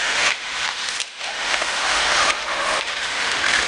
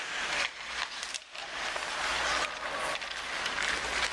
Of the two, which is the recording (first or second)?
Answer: second